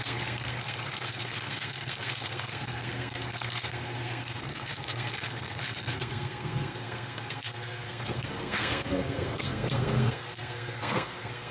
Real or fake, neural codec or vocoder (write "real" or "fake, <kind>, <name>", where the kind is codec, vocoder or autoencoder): fake, codec, SNAC